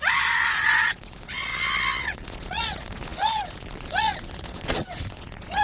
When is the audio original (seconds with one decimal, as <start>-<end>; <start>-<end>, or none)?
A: 1.5-2.0